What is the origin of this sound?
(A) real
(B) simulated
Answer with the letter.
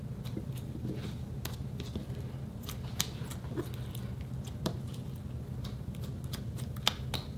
A